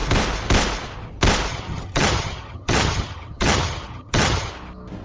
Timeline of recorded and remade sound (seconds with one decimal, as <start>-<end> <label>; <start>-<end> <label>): 0.0-1.5 recorded; 1.5-4.5 remade; 4.5-5.0 recorded

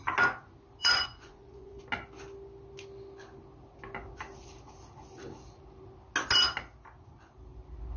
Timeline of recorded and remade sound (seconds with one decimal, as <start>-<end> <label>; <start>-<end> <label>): 0.0-0.8 recorded; 0.8-1.8 remade; 1.8-8.0 recorded